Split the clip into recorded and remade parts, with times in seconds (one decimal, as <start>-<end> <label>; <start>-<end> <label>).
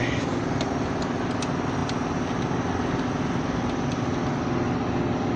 0.0-5.4 recorded